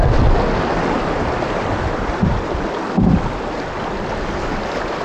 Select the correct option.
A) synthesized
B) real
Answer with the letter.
B